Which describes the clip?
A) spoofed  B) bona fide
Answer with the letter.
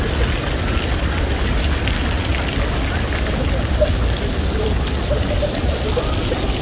B